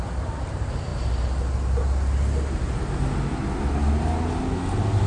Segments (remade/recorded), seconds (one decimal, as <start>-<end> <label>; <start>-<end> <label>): 0.0-5.1 recorded